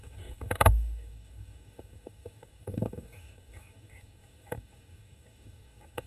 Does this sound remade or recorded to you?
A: remade